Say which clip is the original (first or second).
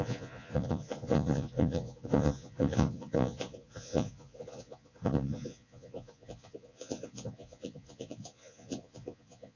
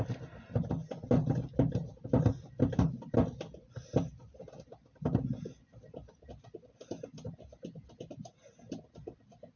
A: second